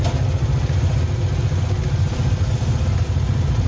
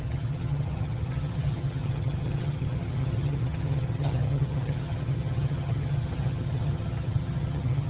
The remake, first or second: second